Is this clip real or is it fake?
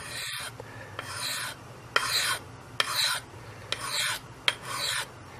real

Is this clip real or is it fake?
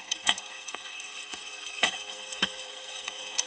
fake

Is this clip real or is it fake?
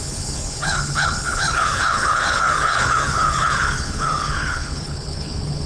fake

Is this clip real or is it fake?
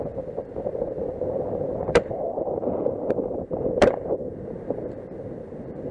fake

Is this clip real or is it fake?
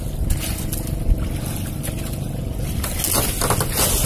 real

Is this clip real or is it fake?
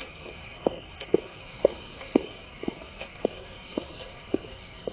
fake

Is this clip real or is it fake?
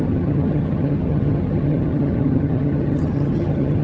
fake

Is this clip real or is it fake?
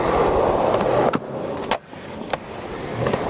real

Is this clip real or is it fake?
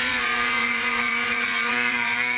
fake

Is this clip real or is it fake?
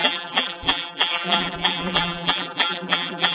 fake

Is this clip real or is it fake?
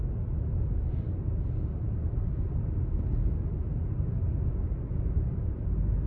real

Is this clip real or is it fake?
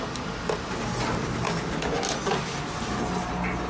real